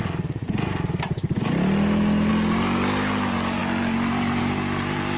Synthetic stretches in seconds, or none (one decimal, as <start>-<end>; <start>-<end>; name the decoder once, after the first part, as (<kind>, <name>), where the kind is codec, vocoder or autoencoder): none